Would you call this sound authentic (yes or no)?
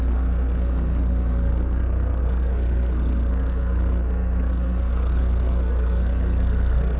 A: no